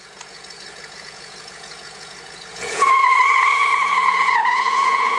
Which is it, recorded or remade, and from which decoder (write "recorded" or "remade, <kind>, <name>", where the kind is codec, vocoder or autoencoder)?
remade, vocoder, Vocos